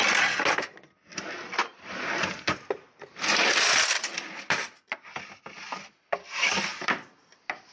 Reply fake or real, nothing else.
real